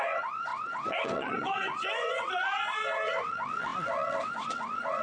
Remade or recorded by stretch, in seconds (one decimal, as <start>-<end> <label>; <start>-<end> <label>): 0.0-5.0 remade